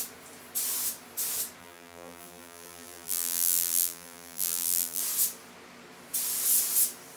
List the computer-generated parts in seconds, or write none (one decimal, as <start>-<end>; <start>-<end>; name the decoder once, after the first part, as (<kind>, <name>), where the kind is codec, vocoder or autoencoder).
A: 1.6-5.0 (vocoder, BigVGAN v2)